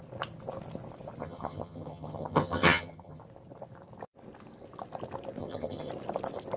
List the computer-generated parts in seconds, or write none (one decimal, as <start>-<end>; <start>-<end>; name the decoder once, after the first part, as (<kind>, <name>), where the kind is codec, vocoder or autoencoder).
1.2-3.2 (vocoder, HiFi-GAN); 5.4-5.9